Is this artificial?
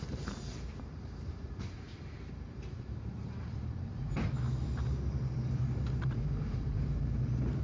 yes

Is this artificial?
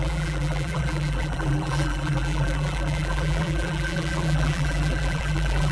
yes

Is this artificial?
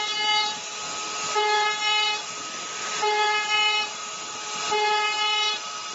yes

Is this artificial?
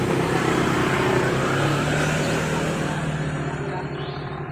yes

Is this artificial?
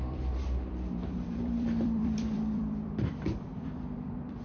yes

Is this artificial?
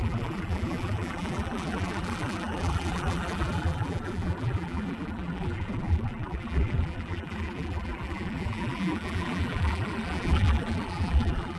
yes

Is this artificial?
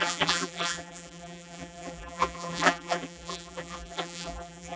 yes